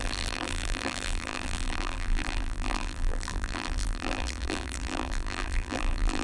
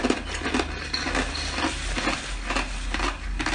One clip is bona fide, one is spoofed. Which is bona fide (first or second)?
second